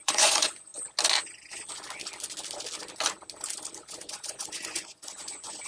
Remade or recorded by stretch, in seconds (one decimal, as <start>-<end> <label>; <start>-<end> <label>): 0.0-0.7 remade; 0.7-4.1 recorded; 4.1-5.7 remade

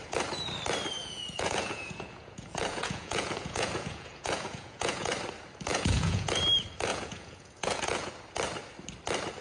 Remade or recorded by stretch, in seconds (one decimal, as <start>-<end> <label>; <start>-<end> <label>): 0.0-1.0 recorded; 1.0-5.1 remade; 5.1-5.7 recorded; 5.7-6.4 remade; 6.4-6.9 recorded; 6.9-8.1 remade; 8.1-9.4 recorded

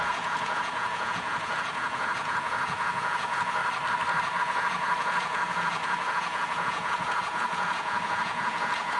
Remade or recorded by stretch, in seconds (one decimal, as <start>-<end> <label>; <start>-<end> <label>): 0.0-3.6 remade; 3.6-4.4 recorded; 4.4-9.0 remade